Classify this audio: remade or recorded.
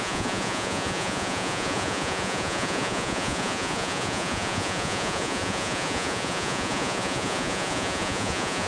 remade